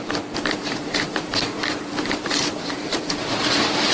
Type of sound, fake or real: fake